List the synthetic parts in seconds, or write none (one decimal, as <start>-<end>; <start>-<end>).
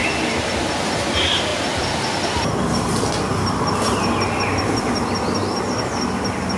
none